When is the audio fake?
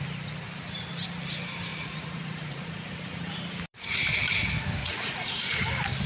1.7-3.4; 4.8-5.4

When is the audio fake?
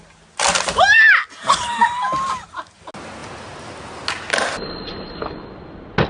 none